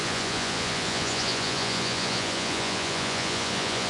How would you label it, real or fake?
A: fake